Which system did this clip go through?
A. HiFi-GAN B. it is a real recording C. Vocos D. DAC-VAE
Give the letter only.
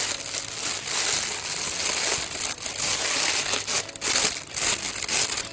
B